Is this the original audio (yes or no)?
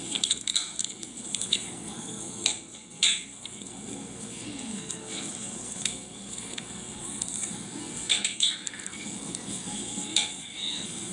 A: no